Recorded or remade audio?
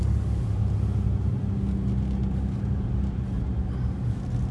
recorded